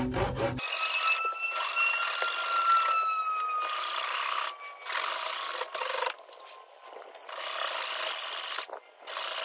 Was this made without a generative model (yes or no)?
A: yes